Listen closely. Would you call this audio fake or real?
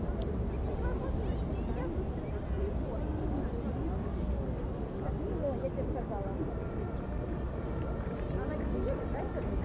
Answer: real